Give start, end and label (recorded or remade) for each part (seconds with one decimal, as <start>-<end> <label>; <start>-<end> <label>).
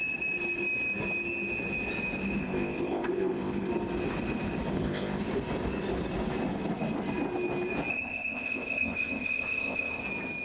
0.0-2.4 recorded; 2.4-3.7 remade; 3.7-4.7 recorded; 4.7-5.2 remade; 5.2-7.9 recorded; 7.9-10.0 remade; 10.0-10.4 recorded